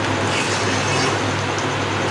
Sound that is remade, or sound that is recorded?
recorded